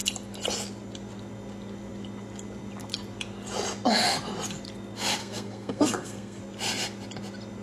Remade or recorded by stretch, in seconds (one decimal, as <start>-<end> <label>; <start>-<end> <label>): 0.0-5.2 recorded; 5.2-6.4 remade; 6.4-7.6 recorded